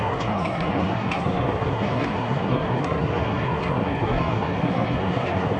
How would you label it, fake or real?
fake